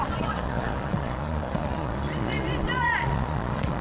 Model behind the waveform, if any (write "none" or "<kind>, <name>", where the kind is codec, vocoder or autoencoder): vocoder, Vocos